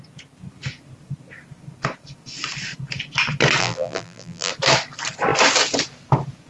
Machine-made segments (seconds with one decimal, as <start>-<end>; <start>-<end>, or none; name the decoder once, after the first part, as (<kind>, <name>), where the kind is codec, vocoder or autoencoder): 3.6-4.5 (vocoder, BigVGAN v2)